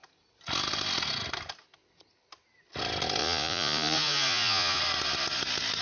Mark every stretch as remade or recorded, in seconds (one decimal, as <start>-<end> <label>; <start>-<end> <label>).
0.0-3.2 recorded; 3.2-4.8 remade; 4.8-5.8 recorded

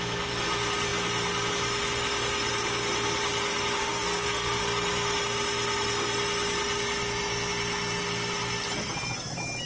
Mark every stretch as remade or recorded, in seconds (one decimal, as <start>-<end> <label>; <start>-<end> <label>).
0.0-3.8 recorded; 3.8-4.6 remade; 4.6-9.7 recorded

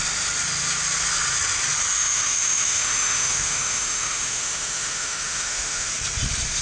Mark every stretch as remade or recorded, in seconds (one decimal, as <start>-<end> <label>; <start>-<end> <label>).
0.0-1.9 recorded; 1.9-5.9 remade; 5.9-6.6 recorded